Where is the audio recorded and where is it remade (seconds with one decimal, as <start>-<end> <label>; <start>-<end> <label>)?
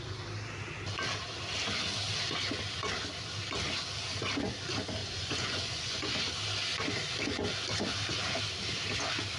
0.0-5.0 recorded; 5.0-6.1 remade; 6.1-9.4 recorded